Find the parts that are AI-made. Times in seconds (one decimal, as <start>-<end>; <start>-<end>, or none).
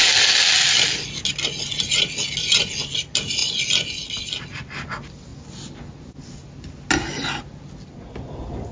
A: none